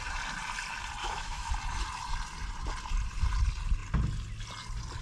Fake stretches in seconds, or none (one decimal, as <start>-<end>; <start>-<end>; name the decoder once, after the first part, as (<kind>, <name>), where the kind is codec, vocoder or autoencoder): 1.0-1.5 (autoencoder, DAC-VAE)